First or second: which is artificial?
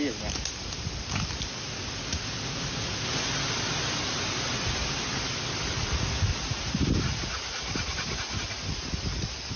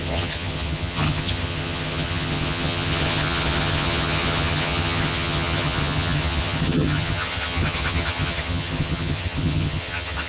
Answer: second